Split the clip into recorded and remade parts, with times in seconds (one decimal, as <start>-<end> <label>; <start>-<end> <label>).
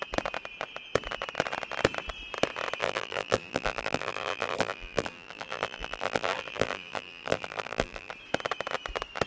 0.0-2.8 recorded; 2.8-8.1 remade; 8.1-9.3 recorded